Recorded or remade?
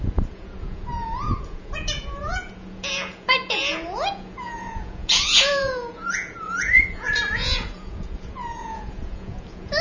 remade